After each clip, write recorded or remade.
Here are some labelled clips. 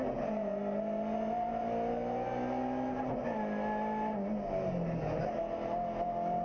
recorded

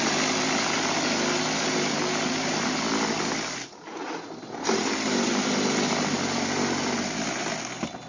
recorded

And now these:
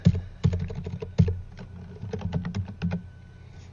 recorded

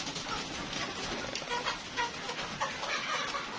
recorded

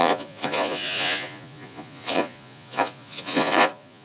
remade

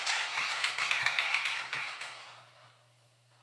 remade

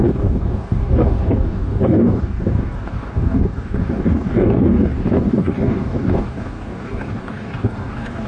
remade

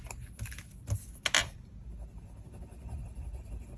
recorded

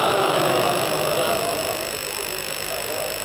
remade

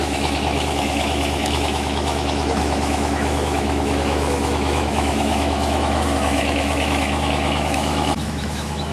remade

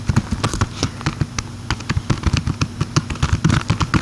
recorded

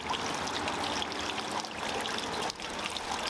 recorded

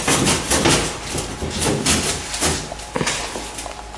recorded